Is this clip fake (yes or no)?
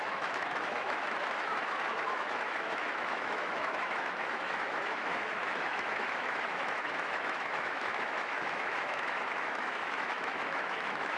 yes